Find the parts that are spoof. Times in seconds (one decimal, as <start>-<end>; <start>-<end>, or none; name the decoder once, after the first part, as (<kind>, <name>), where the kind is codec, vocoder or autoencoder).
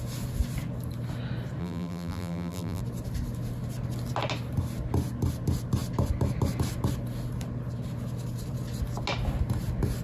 1.6-2.8 (vocoder, BigVGAN v2)